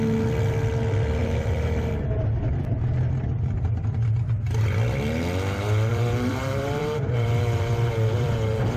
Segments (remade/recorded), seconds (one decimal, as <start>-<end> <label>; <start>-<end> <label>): 0.0-1.2 recorded; 1.2-1.9 remade; 1.9-5.9 recorded; 5.9-8.8 remade